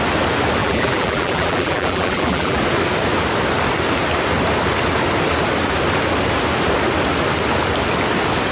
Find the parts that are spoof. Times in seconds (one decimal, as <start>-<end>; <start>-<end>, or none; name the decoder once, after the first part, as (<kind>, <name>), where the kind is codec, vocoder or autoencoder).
0.6-2.6 (vocoder, BigVGAN v2)